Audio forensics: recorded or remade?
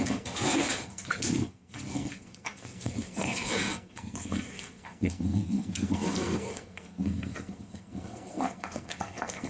remade